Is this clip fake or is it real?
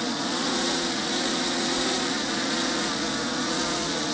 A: fake